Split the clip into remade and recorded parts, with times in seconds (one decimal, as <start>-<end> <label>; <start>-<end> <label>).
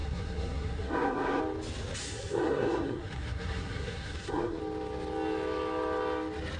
0.0-1.4 remade; 1.4-2.0 recorded; 2.0-4.6 remade; 4.6-6.6 recorded